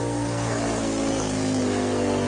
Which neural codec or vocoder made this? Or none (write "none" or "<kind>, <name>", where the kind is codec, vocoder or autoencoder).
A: codec, SNAC